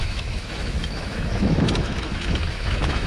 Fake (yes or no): yes